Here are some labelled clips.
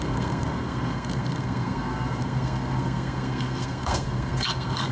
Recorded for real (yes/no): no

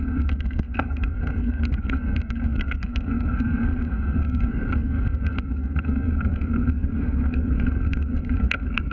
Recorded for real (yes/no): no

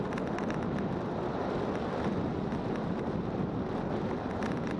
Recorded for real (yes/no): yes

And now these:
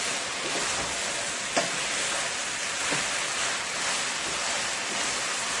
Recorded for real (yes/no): yes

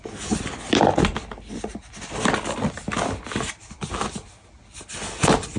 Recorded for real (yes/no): yes